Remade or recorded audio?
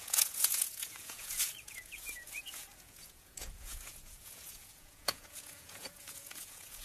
remade